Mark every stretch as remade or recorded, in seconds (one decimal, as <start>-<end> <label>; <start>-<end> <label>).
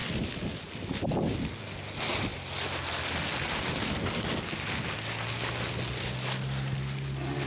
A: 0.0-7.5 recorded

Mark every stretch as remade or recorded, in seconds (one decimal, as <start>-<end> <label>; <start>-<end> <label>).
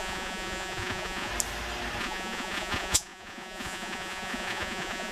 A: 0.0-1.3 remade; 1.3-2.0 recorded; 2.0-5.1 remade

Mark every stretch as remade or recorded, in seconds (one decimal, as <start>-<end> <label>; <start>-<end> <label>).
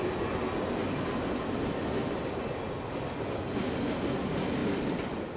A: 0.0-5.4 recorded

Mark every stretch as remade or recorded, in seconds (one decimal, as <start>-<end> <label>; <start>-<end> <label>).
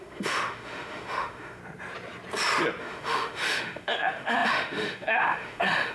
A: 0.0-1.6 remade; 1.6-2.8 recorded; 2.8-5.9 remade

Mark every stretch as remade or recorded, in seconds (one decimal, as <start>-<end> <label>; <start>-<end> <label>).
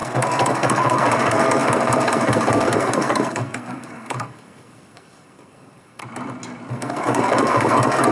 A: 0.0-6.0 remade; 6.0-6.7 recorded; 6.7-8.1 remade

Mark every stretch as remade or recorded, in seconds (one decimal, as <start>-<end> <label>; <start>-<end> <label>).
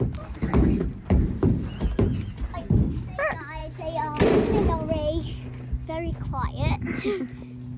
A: 0.0-7.8 recorded